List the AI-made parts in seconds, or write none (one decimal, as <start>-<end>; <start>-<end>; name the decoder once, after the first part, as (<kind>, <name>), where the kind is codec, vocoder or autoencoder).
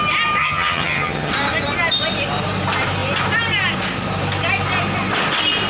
0.4-1.3 (vocoder, HiFi-GAN)